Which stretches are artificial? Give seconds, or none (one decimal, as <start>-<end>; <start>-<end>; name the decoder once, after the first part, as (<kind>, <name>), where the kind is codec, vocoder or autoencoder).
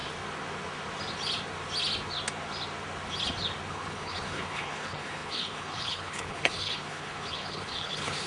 3.7-8.3 (codec, HILCodec)